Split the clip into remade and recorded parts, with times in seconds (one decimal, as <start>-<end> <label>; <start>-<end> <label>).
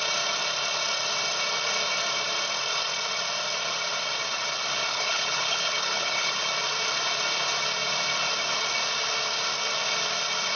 0.0-4.9 recorded; 4.9-6.4 remade; 6.4-10.6 recorded